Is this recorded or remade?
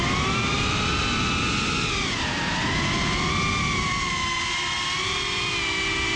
recorded